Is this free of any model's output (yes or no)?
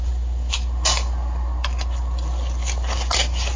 yes